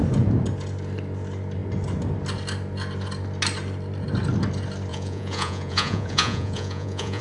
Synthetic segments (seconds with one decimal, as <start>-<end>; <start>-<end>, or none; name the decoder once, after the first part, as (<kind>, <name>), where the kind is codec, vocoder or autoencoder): 4.9-7.2 (vocoder, Vocos)